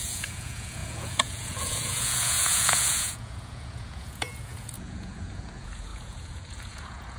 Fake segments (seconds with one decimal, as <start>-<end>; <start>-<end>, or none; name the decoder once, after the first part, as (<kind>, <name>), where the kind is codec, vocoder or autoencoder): 0.0-7.2 (vocoder, Vocos)